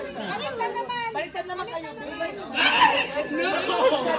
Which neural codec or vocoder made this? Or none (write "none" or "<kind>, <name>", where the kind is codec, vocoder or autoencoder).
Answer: none